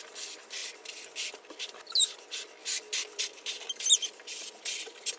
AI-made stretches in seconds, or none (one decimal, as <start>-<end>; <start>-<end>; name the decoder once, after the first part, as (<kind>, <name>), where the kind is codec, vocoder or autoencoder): none